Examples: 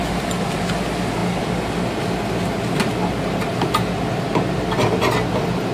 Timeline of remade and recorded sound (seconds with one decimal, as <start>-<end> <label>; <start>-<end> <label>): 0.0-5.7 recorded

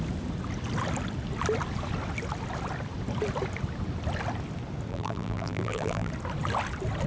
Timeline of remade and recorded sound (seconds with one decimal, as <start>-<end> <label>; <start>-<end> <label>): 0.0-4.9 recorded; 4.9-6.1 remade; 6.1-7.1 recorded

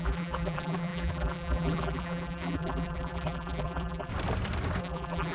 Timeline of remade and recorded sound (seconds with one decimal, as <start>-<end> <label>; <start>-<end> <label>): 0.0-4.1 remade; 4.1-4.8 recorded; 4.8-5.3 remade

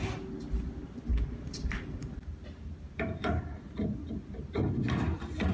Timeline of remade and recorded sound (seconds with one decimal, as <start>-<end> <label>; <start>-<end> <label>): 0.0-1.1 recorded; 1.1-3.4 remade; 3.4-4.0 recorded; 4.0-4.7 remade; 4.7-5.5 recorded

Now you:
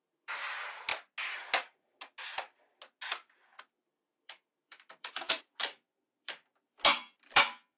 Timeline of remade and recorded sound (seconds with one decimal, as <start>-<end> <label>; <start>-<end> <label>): 0.0-0.9 remade; 0.9-3.6 recorded; 3.6-7.8 remade